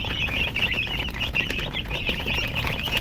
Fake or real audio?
fake